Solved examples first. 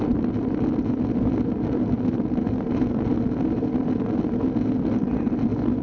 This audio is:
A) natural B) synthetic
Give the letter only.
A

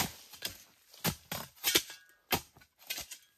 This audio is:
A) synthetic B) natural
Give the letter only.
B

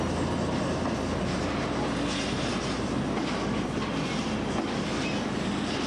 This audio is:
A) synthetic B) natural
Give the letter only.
B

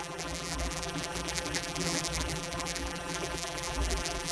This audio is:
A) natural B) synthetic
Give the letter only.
B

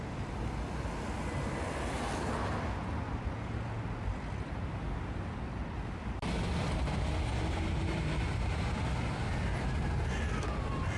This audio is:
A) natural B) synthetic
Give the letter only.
A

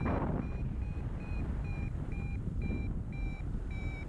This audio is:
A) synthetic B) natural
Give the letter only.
A